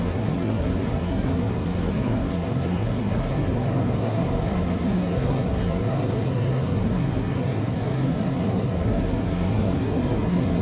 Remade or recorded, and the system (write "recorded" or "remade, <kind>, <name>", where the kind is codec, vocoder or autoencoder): remade, codec, SNAC